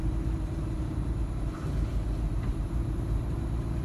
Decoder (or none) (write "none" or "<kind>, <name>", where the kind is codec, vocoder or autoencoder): vocoder, BigVGAN v2